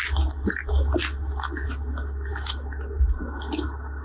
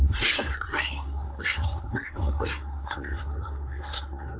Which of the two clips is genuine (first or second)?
first